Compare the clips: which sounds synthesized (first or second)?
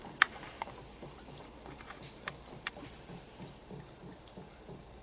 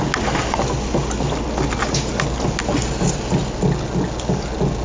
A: first